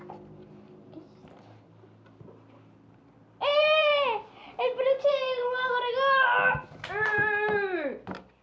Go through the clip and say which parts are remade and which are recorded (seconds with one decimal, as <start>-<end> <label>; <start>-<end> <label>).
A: 0.0-8.4 remade